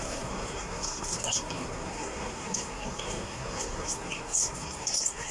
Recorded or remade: remade